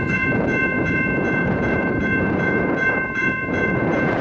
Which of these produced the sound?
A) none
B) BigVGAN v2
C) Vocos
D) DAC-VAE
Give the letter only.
C